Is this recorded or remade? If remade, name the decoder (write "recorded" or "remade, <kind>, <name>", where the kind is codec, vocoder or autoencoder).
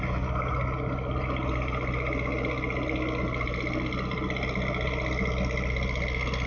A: recorded